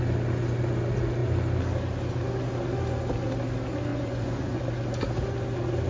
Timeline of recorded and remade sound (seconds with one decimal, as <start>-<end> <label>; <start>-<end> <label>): 0.0-3.9 recorded; 3.9-4.6 remade; 4.6-5.9 recorded